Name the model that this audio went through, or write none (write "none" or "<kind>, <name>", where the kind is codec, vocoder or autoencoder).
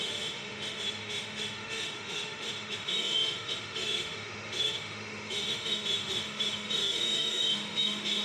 autoencoder, DAC-VAE